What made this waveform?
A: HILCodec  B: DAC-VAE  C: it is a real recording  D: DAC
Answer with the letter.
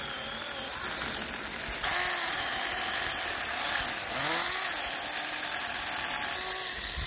C